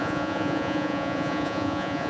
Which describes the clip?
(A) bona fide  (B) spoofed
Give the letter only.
B